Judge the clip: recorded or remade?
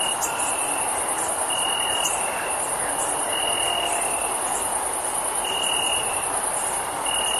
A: recorded